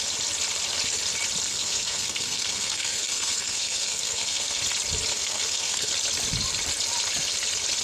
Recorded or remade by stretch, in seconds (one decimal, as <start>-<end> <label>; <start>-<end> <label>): 0.0-1.5 recorded; 1.5-4.6 remade; 4.6-5.1 recorded; 5.1-5.9 remade; 5.9-7.8 recorded